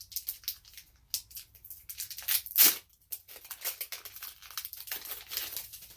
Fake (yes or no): no